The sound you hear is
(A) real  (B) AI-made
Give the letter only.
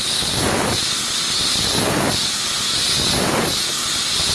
A